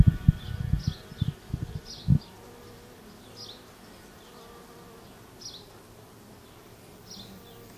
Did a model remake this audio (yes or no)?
no